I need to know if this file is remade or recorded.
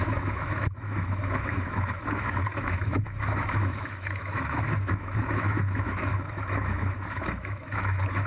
remade